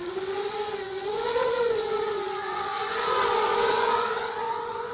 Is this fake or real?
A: fake